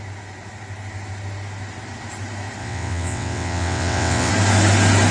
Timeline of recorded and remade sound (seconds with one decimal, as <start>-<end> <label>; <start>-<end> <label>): 0.0-2.6 recorded; 2.6-4.3 remade; 4.3-5.1 recorded